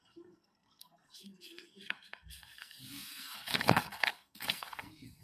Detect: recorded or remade remade